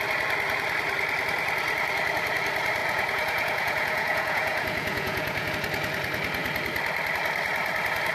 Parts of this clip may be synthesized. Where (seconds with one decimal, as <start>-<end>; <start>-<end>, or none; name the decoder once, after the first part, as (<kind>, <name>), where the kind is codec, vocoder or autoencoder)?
2.8-5.5 (vocoder, Vocos)